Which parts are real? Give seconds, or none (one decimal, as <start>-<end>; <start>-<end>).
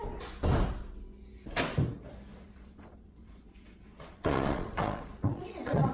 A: 0.0-2.3